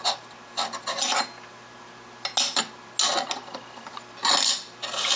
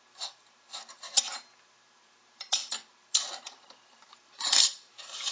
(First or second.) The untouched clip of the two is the first